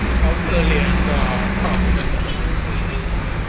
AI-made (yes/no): no